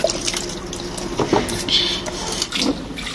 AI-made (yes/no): no